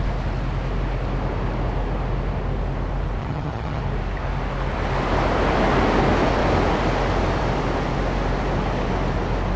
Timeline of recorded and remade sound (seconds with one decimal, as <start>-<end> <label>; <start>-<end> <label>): 0.0-3.2 recorded; 3.2-3.8 remade; 3.8-9.6 recorded